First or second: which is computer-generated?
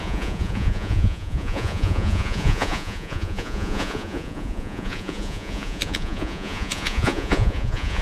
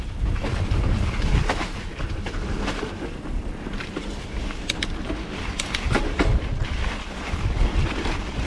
first